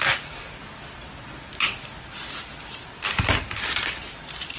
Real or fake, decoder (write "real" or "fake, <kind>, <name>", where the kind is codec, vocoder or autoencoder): real